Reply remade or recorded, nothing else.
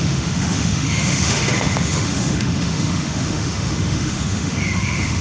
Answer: remade